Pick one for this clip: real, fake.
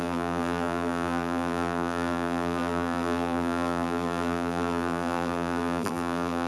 fake